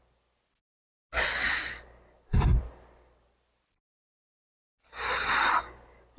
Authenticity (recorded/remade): recorded